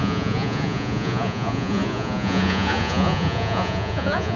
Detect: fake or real fake